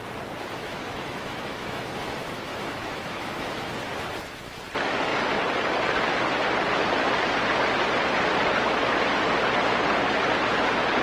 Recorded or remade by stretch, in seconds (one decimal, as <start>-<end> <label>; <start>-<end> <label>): 0.0-0.6 recorded; 0.6-3.7 remade; 3.7-11.0 recorded